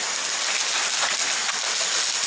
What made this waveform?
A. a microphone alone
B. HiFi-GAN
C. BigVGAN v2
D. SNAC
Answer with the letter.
A